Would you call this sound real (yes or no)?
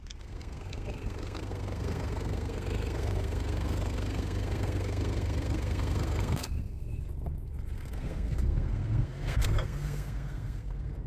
no